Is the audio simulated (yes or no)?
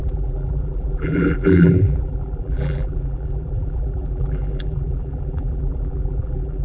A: yes